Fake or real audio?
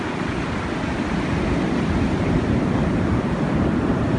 real